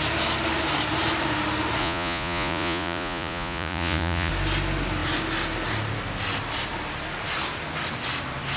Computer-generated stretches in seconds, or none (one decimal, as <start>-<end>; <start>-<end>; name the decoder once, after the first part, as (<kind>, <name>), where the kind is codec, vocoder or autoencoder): 1.8-4.3 (vocoder, Vocos)